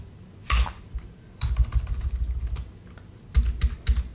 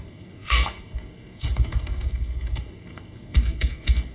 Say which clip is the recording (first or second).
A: first